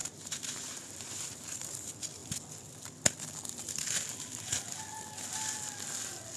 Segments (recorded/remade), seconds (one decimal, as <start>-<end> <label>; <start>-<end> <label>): 0.0-1.7 remade; 1.7-6.4 recorded